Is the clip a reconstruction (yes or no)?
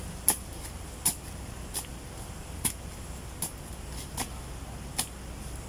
no